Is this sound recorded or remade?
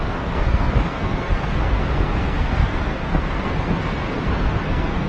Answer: remade